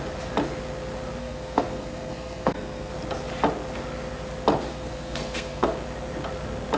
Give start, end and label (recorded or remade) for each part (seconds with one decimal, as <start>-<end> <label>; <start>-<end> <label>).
0.0-1.2 recorded; 1.2-2.9 remade; 2.9-4.7 recorded; 4.7-5.7 remade; 5.7-6.8 recorded